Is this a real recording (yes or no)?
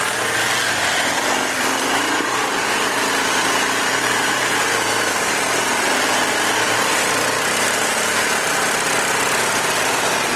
yes